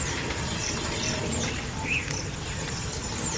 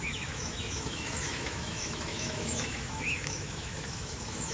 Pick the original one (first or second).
first